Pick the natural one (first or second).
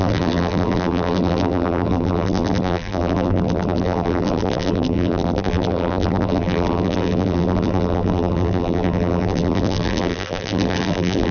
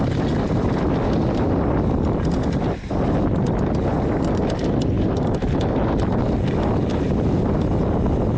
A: second